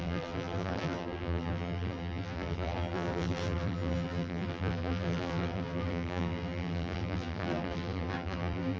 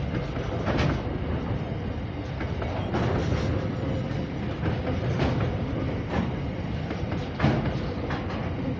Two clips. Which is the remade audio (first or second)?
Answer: first